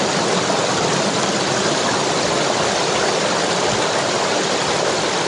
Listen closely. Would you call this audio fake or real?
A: real